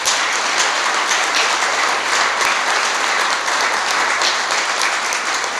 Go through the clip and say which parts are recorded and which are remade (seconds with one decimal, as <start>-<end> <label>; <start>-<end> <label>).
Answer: 0.0-5.6 recorded